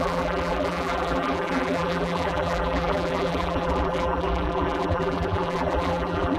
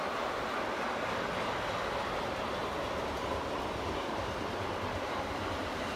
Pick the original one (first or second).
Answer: second